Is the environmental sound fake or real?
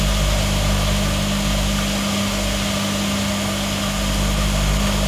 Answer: real